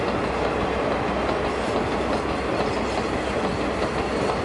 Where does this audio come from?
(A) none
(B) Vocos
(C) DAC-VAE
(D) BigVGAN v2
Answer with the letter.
A